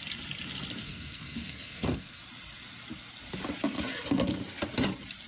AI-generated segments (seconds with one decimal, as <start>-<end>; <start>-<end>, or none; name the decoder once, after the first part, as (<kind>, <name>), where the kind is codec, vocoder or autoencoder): 0.8-2.2 (codec, SNAC)